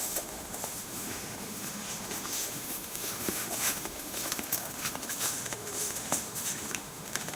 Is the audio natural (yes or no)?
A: no